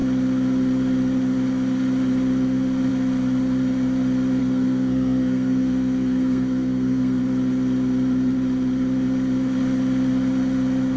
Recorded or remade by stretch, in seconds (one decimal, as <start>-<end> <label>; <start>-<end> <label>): 0.0-4.4 recorded; 4.4-7.2 remade; 7.2-11.0 recorded